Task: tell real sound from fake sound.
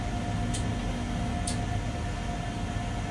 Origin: real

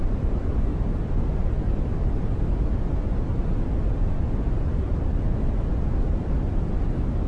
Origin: real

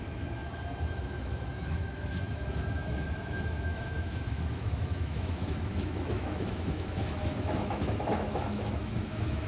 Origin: fake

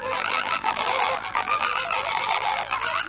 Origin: fake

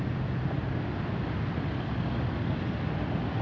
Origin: real